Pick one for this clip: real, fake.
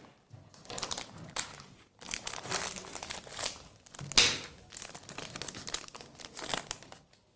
real